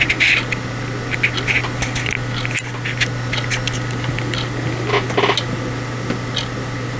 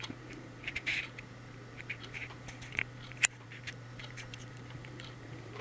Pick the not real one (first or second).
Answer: second